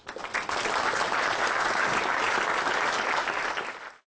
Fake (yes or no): no